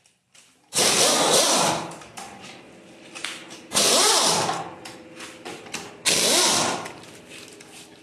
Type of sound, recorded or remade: remade